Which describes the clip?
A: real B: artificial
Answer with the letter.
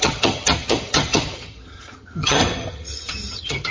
B